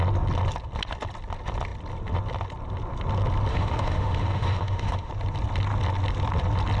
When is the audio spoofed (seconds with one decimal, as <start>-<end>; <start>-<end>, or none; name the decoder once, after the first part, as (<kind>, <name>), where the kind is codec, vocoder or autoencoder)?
3.5-5.1 (autoencoder, DAC-VAE)